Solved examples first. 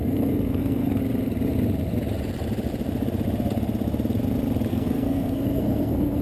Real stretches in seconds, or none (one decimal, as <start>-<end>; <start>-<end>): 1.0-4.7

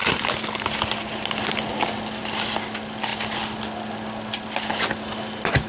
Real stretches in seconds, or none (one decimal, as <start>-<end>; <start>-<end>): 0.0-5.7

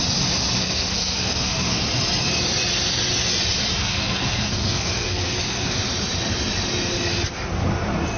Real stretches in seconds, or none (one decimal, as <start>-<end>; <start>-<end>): 0.0-0.6; 1.8-3.8; 5.8-8.2